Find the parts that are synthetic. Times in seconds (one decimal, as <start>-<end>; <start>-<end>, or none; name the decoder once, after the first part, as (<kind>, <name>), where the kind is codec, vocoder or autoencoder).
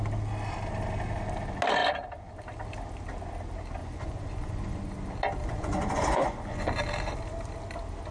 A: 3.8-4.8 (vocoder, Vocos); 5.4-6.7